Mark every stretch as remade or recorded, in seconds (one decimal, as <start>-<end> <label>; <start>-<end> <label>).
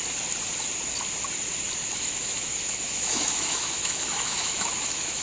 0.0-1.8 recorded; 1.8-5.2 remade